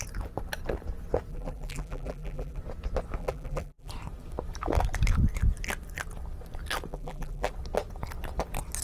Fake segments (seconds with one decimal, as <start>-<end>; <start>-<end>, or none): 1.3-2.6; 3.2-3.9; 6.9-7.5